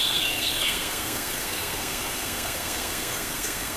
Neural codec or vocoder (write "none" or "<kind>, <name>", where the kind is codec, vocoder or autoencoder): codec, SNAC